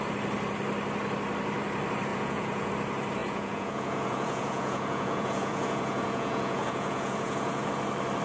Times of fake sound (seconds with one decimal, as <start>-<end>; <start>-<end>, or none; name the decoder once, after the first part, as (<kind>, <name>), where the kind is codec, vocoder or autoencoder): 2.1-2.7 (vocoder, Vocos); 3.2-7.7